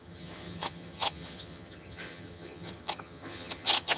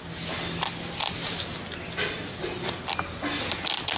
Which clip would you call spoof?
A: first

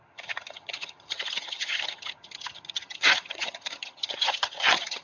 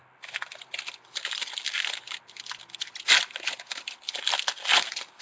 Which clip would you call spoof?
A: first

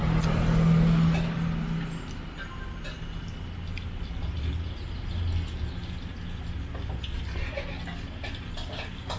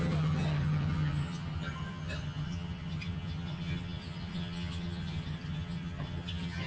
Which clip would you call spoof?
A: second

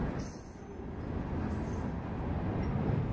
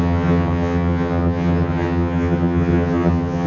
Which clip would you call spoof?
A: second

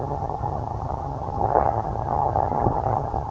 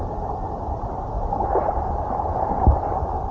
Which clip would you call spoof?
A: first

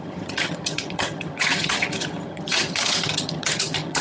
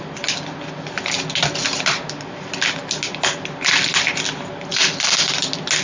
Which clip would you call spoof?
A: first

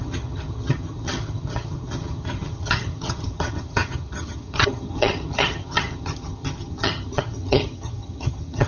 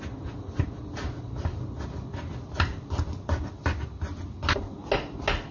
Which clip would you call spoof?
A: first